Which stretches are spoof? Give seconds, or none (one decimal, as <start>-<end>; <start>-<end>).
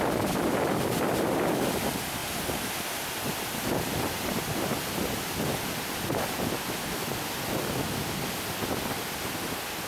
none